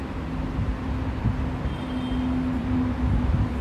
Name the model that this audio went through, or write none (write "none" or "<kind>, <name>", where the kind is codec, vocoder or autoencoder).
none